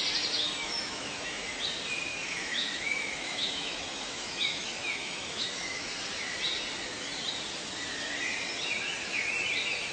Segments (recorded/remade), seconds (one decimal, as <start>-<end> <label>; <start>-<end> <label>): 0.0-0.6 recorded; 0.6-1.6 remade; 1.6-2.1 recorded; 2.1-5.9 remade; 5.9-9.9 recorded